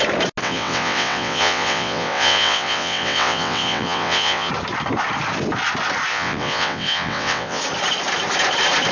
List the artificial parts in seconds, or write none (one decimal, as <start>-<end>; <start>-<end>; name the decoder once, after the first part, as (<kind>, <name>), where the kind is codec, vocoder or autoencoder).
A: 0.4-4.5 (vocoder, WaveNeXt); 6.1-7.6